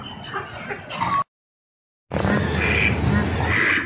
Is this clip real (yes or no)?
yes